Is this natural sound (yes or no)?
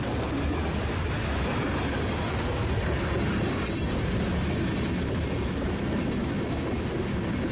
yes